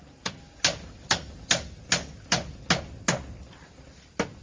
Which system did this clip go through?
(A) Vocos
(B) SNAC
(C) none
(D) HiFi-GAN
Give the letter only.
C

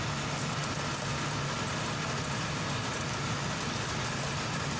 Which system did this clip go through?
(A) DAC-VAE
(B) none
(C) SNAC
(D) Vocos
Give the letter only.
B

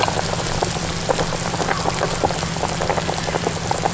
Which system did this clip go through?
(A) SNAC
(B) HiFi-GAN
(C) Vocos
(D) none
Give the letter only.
D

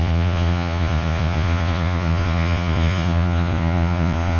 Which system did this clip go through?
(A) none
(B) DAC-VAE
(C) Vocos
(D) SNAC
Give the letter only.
C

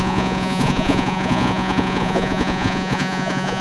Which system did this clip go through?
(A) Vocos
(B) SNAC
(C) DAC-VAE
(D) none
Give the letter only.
A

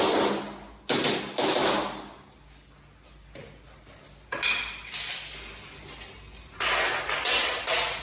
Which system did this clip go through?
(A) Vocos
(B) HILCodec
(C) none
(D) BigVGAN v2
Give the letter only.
C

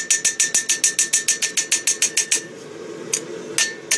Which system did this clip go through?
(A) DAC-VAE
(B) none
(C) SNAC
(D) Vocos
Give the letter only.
B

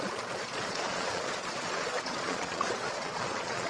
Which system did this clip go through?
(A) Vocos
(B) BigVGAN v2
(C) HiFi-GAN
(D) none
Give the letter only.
A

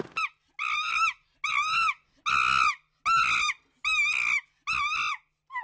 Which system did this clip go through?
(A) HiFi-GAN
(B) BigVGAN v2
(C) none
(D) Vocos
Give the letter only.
C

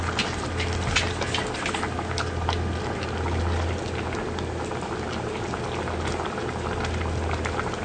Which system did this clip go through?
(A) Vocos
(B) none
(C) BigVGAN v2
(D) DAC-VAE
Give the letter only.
B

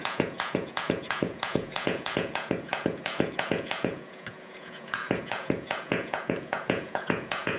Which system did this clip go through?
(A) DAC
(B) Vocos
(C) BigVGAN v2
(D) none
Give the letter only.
B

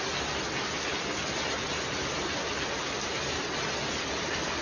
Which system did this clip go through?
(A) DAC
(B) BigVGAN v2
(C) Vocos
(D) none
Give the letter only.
D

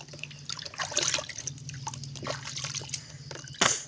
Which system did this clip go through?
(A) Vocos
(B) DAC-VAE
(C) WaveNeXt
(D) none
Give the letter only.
D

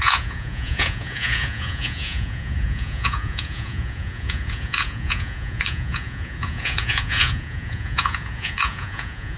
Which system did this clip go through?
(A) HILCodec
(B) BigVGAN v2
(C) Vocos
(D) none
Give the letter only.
C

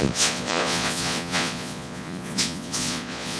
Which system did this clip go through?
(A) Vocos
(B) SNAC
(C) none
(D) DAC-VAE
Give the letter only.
A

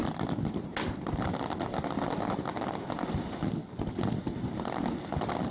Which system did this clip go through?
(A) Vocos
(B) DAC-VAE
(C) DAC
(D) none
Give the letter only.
D